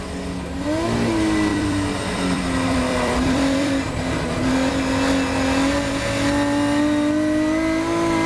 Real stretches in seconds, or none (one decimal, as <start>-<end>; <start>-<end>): 0.0-1.5; 4.7-8.3